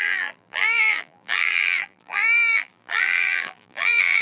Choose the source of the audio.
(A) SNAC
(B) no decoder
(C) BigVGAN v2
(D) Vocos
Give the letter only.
C